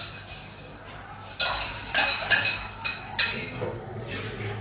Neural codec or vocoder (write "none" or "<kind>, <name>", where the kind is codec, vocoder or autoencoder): none